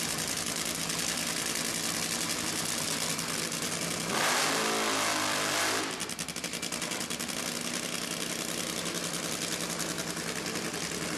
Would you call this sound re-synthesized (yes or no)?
no